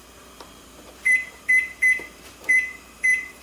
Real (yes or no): no